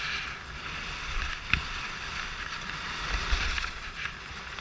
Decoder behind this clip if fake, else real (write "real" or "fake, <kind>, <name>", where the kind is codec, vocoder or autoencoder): fake, vocoder, BigVGAN v2